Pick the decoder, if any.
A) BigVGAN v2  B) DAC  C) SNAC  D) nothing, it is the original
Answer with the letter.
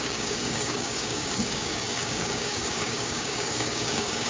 B